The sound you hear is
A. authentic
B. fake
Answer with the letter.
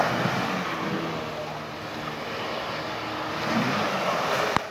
A